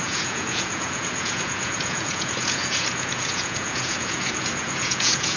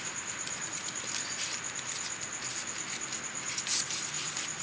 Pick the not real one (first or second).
first